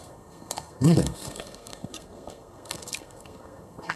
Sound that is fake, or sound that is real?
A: fake